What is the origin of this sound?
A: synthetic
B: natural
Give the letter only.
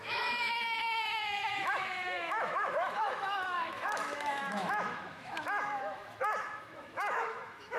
A